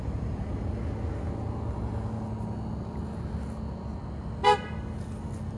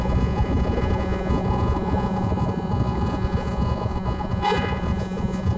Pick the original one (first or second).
first